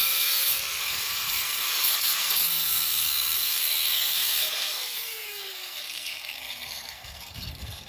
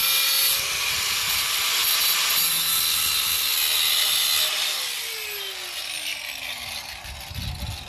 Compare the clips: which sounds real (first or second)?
second